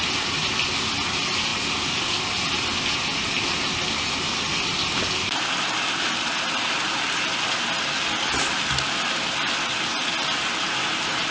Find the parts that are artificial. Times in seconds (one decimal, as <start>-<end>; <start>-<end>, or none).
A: none